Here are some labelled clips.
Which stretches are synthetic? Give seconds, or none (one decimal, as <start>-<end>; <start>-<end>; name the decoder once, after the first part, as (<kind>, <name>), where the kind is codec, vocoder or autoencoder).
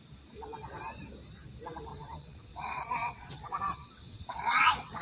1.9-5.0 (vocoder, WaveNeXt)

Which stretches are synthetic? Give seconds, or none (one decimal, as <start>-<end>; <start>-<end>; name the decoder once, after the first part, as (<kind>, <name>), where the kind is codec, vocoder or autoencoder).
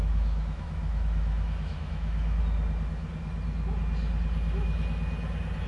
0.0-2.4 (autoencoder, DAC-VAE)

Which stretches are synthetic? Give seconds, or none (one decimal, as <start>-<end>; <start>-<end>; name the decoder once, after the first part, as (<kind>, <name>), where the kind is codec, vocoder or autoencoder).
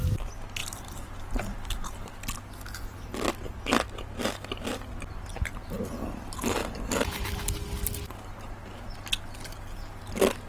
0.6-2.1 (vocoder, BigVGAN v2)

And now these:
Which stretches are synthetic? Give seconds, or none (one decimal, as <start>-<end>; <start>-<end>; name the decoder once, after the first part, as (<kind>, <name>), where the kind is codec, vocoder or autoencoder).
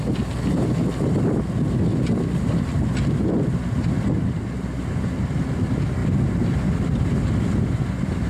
1.9-4.4 (vocoder, BigVGAN v2)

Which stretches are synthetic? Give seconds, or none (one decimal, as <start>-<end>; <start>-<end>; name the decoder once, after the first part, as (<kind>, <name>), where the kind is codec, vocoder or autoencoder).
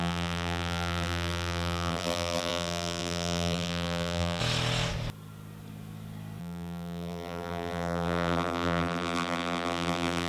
0.0-4.4 (vocoder, BigVGAN v2); 6.4-10.3